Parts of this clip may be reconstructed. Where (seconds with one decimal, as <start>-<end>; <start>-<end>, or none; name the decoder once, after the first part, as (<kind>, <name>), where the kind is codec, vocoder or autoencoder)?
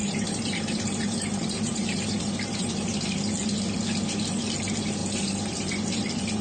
0.0-2.7 (vocoder, BigVGAN v2); 5.0-5.7